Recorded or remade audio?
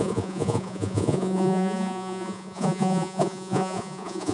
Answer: remade